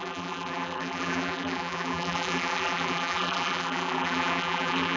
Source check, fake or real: fake